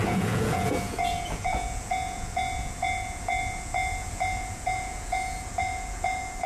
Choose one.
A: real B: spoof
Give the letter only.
B